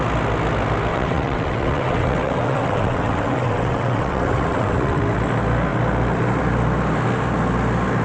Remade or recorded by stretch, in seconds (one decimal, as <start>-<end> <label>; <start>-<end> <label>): 0.0-0.9 recorded; 0.9-5.0 remade; 5.0-8.0 recorded